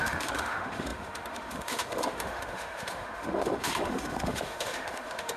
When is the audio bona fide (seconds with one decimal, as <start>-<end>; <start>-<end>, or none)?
none